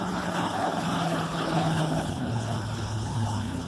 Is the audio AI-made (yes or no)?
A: yes